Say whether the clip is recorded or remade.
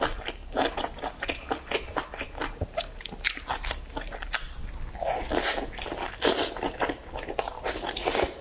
recorded